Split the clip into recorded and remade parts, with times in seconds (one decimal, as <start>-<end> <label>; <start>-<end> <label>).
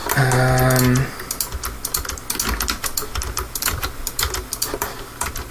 0.0-3.3 recorded; 3.3-5.5 remade